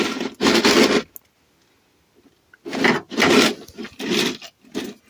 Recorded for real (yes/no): yes